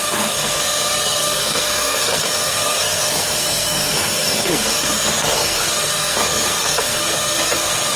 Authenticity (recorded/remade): remade